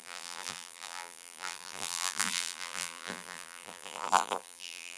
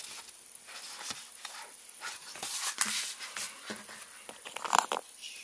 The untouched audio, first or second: second